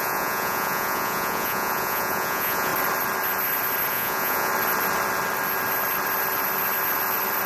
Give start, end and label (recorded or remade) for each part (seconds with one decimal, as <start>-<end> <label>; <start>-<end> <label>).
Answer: 0.0-2.7 remade; 2.7-3.9 recorded; 3.9-4.5 remade; 4.5-7.5 recorded